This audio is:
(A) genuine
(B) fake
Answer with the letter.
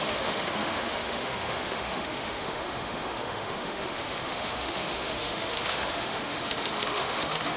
B